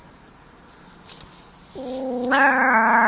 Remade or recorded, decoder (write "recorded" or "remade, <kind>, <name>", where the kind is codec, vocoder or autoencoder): recorded